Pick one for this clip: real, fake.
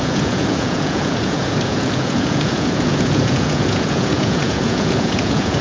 fake